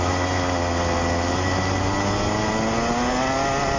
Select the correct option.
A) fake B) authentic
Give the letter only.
B